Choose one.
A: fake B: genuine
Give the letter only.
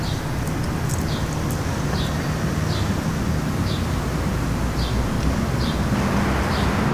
B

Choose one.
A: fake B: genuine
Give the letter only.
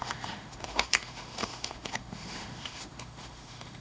A